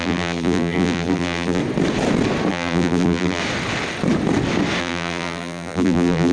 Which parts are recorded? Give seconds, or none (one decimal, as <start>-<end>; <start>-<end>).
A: 1.6-2.5; 3.4-4.8